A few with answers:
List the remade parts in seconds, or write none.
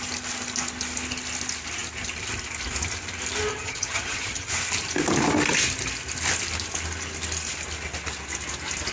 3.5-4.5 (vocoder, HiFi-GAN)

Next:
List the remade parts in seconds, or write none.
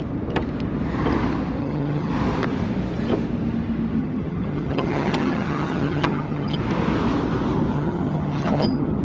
1.6-2.1 (vocoder, HiFi-GAN); 4.0-6.6; 7.7-9.0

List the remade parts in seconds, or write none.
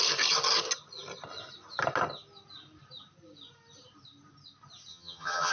4.9-5.5 (vocoder, HiFi-GAN)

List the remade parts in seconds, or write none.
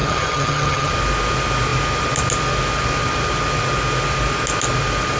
0.0-0.9 (vocoder, HiFi-GAN)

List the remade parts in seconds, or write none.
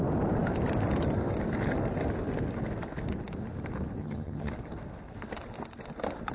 4.0-4.5 (vocoder, HiFi-GAN)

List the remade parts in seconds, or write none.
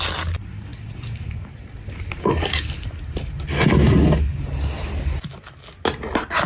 none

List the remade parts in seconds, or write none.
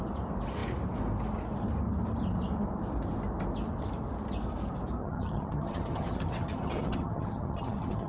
5.0-8.1 (vocoder, HiFi-GAN)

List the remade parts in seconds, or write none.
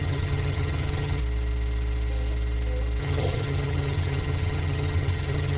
0.0-1.2 (vocoder, HiFi-GAN); 3.0-5.6